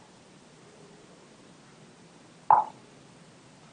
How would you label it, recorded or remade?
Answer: recorded